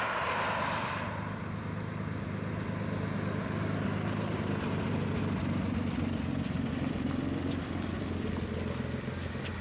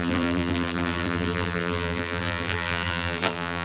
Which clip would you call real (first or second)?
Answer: first